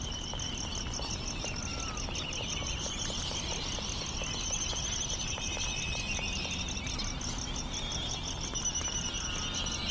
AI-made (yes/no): no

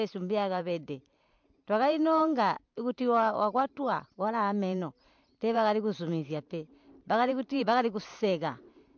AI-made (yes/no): yes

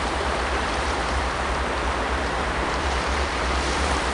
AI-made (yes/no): yes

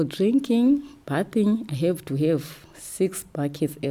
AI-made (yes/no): no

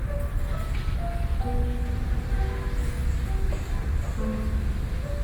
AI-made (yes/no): no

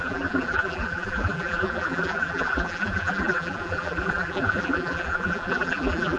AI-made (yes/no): yes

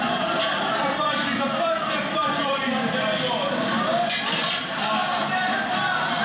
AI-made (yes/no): yes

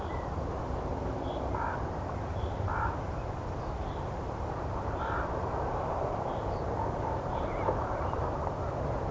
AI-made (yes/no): yes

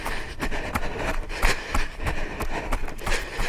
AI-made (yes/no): yes